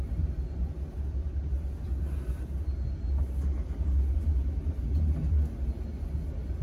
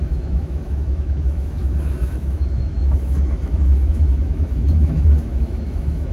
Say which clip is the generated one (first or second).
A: second